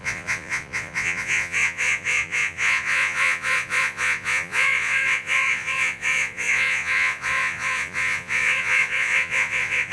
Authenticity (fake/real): fake